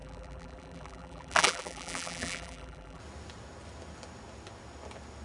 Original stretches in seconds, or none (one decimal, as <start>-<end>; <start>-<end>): 3.0-5.2